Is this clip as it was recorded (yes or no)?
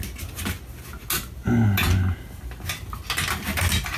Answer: yes